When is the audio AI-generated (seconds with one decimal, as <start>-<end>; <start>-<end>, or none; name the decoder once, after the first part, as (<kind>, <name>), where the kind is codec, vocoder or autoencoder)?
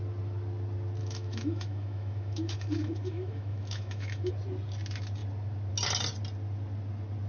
1.0-4.3 (autoencoder, DAC-VAE)